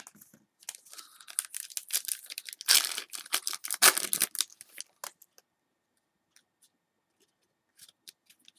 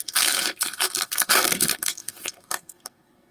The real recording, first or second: first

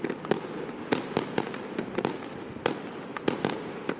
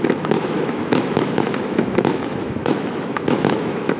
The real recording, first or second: first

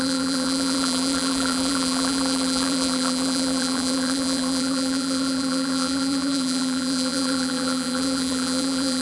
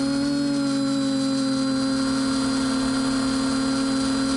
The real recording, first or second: second